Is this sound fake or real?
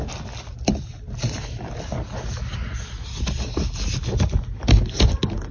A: real